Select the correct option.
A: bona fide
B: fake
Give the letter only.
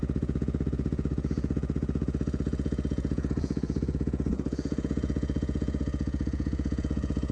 B